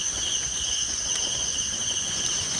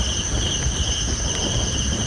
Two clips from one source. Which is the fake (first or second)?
first